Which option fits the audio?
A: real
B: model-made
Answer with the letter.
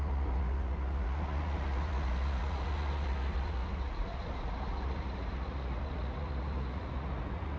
B